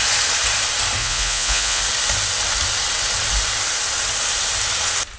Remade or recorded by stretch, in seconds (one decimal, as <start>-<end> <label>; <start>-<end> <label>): 0.0-1.0 recorded; 1.0-1.8 remade; 1.8-5.2 recorded